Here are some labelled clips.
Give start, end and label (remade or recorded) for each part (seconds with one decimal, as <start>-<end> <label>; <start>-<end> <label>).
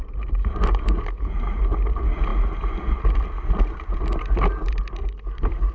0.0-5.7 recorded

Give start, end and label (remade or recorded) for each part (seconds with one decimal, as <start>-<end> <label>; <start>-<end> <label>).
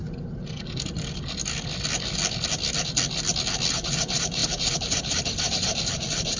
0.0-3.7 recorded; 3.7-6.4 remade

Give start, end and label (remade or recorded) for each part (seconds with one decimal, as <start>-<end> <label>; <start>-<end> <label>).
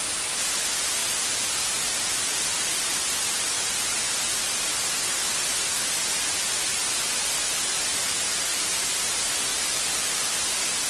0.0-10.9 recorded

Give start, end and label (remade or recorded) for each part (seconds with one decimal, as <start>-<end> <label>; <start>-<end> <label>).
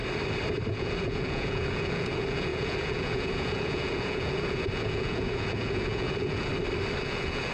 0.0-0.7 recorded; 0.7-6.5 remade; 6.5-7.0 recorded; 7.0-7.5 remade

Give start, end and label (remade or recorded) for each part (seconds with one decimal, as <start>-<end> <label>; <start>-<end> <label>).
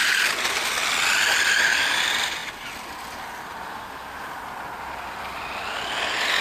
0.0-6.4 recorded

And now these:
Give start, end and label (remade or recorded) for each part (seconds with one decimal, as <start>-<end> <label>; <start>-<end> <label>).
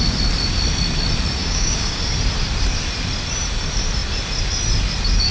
0.0-1.4 recorded; 1.4-2.0 remade; 2.0-5.3 recorded